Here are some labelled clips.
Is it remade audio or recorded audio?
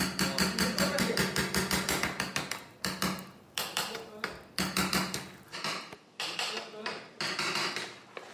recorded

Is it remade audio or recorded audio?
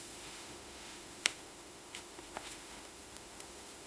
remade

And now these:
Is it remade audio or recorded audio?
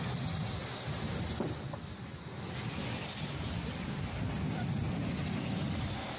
recorded